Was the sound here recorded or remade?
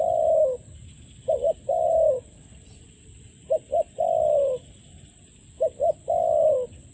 recorded